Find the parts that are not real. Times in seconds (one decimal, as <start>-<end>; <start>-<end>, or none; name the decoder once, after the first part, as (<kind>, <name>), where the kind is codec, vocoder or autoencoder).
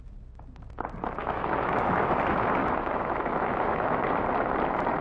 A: 1.2-2.0 (autoencoder, DAC-VAE); 2.6-4.0